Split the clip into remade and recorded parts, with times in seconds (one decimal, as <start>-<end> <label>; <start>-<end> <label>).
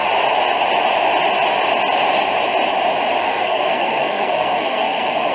0.0-3.2 recorded; 3.2-5.3 remade